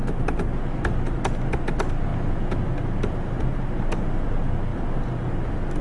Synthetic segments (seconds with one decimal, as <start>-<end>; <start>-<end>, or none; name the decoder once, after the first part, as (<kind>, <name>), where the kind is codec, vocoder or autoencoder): none